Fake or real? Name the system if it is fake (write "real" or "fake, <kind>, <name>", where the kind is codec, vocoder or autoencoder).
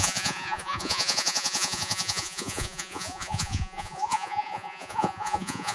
fake, vocoder, Vocos